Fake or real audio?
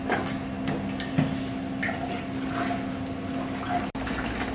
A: real